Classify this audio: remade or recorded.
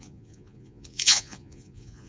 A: remade